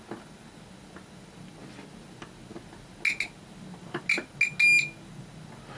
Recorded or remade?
recorded